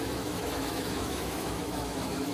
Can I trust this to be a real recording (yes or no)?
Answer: no